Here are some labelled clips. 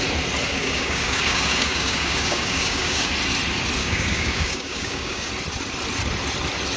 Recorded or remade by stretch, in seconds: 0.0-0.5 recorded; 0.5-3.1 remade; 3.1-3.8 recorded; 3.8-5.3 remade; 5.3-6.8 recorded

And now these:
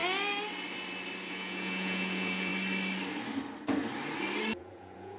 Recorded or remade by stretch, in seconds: 0.0-1.3 recorded; 1.3-2.5 remade; 2.5-4.6 recorded; 4.6-5.2 remade

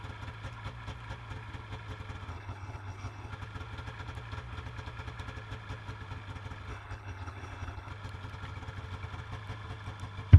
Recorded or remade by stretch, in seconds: 0.0-2.3 recorded; 2.3-3.3 remade; 3.3-6.7 recorded; 6.7-7.9 remade; 7.9-10.4 recorded

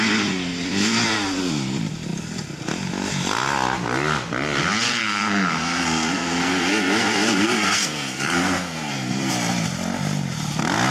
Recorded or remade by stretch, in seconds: 0.0-5.0 recorded; 5.0-9.3 remade; 9.3-10.9 recorded

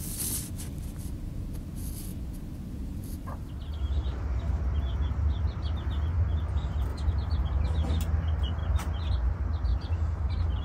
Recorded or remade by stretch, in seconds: 0.0-6.9 recorded; 6.9-7.6 remade; 7.6-9.7 recorded; 9.7-10.6 remade

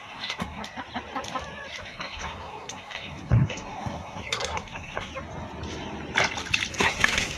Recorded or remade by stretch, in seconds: 0.0-0.6 remade; 0.6-1.8 recorded; 1.8-5.1 remade; 5.1-6.7 recorded; 6.7-7.4 remade

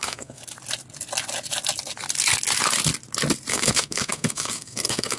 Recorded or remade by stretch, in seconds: 0.0-0.4 remade; 0.4-3.5 recorded; 3.5-5.2 remade

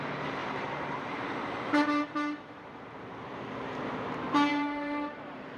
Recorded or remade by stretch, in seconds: 0.0-0.4 recorded; 0.4-3.8 remade; 3.8-4.5 recorded; 4.5-5.6 remade